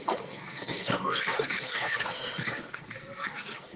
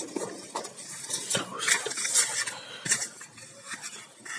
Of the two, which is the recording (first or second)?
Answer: second